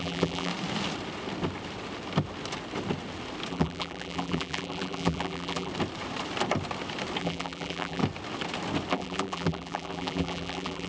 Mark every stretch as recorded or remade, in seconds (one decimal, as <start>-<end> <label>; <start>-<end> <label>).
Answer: 0.0-0.5 remade; 0.5-3.5 recorded; 3.5-5.7 remade; 5.7-7.2 recorded; 7.2-8.0 remade; 8.0-8.9 recorded; 8.9-10.9 remade